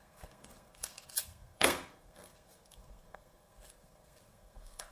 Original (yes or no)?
no